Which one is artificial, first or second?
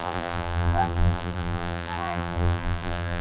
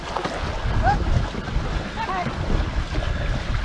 first